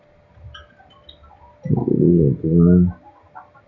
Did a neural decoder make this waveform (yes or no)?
no